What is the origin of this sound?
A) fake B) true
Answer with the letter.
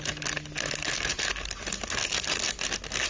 B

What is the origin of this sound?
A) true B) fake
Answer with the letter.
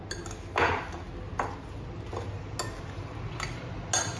A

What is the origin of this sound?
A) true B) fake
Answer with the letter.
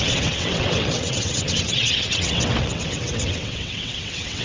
B